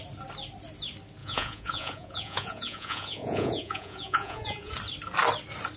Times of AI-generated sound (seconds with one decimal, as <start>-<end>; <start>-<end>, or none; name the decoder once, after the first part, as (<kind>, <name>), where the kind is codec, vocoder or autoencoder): 1.2-4.7 (vocoder, Vocos)